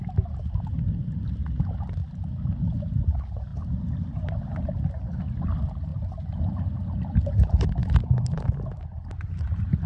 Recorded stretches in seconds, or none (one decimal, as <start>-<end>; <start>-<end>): 0.0-2.0; 3.0-9.9